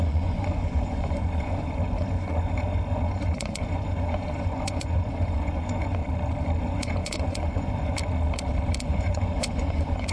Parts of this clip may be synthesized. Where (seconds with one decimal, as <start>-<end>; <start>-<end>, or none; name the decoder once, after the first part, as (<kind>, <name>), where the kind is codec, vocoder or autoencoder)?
0.0-6.0 (vocoder, Vocos); 6.6-8.0; 8.8-10.1